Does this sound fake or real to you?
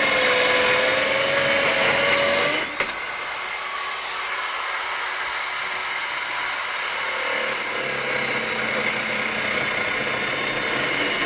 real